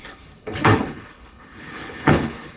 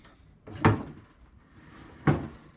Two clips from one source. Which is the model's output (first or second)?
first